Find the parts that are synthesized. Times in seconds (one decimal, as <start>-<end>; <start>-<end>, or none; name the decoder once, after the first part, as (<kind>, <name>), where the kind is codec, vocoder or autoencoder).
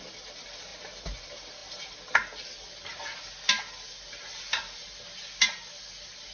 none